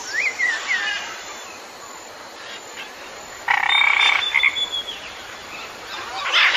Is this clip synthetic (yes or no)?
no